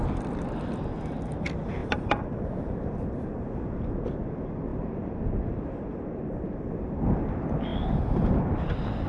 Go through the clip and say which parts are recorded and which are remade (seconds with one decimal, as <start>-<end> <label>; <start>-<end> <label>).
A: 0.0-1.8 recorded; 1.8-3.6 remade; 3.6-4.7 recorded; 4.7-6.0 remade; 6.0-7.7 recorded; 7.7-8.7 remade; 8.7-9.1 recorded